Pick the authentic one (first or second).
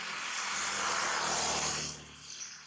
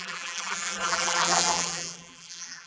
first